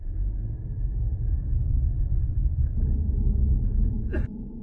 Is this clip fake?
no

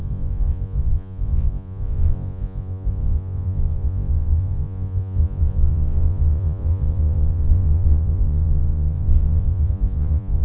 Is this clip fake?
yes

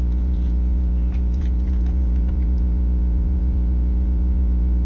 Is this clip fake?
yes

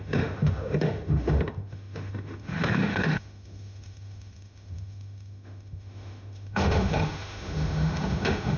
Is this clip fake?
yes